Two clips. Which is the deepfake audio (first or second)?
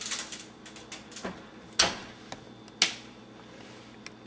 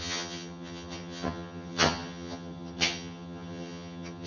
second